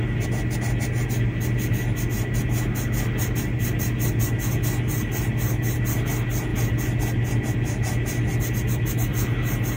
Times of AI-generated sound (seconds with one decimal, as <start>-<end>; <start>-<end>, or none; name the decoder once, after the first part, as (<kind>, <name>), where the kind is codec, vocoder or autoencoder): none